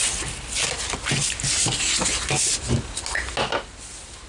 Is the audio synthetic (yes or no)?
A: no